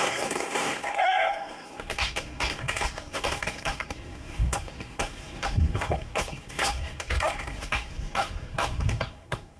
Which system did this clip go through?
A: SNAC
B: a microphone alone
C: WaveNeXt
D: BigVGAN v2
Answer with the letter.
A